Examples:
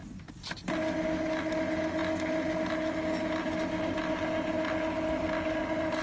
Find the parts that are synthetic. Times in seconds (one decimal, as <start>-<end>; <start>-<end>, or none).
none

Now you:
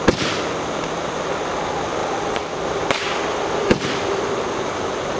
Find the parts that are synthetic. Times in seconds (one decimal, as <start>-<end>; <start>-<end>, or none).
none

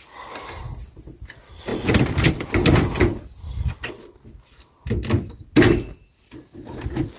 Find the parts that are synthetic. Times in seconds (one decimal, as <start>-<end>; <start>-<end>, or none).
none